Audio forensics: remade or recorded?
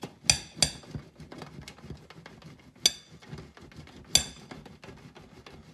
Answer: recorded